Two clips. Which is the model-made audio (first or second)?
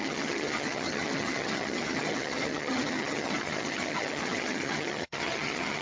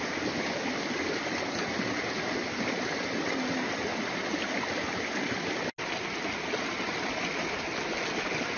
first